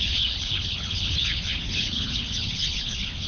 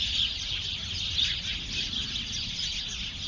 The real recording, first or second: second